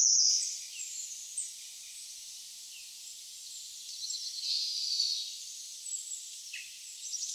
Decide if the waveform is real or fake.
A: real